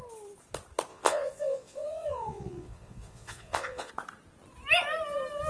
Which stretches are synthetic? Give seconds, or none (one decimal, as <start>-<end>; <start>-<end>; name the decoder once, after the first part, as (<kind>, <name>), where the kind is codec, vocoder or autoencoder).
0.9-3.9 (vocoder, Vocos)